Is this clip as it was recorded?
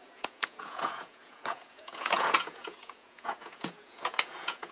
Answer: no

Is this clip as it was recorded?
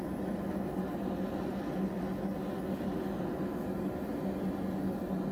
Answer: yes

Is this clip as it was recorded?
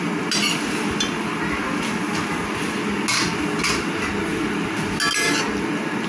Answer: yes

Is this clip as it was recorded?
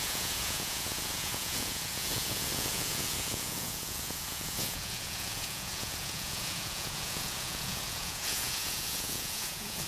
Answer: no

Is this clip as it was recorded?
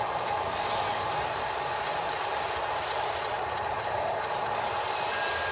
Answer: yes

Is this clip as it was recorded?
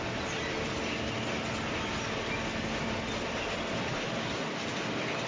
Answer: yes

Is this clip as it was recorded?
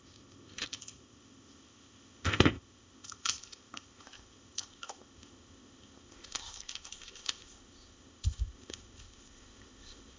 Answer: no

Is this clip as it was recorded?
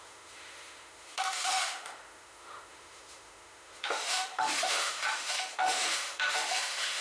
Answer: no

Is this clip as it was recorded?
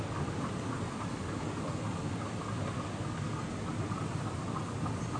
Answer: yes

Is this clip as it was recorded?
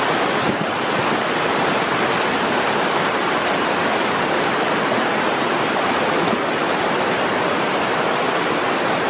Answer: no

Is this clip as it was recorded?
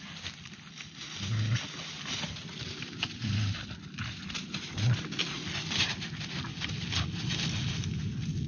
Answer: yes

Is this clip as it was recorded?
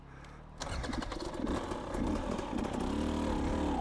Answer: yes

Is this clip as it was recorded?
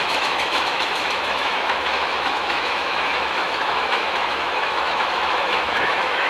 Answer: no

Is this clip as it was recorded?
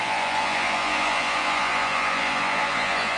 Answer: no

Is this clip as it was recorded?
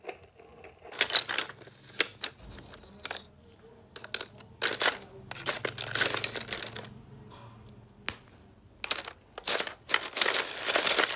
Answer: yes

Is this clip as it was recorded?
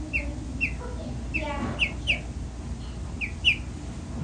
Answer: yes